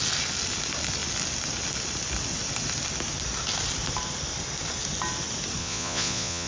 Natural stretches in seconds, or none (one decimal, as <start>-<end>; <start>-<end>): 0.0-5.6